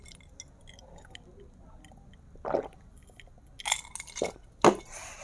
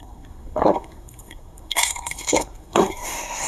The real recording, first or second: first